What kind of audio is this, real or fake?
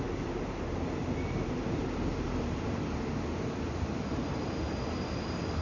real